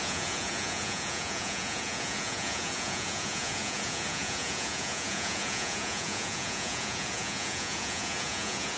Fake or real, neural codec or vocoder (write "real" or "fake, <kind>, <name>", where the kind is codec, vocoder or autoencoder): fake, vocoder, Vocos